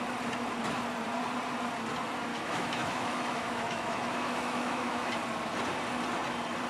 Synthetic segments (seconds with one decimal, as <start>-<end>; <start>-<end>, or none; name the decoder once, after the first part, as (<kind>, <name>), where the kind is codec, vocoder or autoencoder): 2.3-5.1 (autoencoder, DAC-VAE)